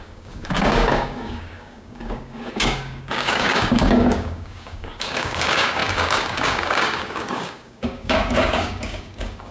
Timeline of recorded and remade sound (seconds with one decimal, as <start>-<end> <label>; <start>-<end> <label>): 0.0-9.5 remade